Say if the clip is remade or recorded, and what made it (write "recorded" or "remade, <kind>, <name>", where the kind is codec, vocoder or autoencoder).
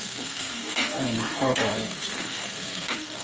remade, codec, SNAC